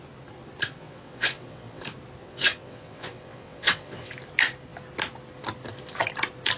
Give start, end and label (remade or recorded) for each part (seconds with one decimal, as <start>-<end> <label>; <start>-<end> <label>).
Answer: 0.0-0.8 recorded; 0.8-1.8 remade; 1.8-2.2 recorded; 2.2-4.1 remade; 4.1-6.6 recorded